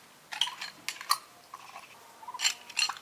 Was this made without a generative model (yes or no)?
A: yes